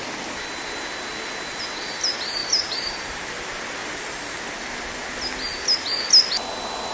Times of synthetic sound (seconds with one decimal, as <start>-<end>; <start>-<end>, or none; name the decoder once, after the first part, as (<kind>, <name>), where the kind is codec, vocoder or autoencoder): 2.4-3.3 (vocoder, BigVGAN v2); 3.8-4.4